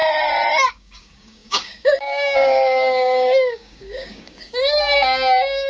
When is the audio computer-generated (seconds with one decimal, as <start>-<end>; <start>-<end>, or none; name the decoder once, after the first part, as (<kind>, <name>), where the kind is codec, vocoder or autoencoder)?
0.7-5.7 (codec, DAC)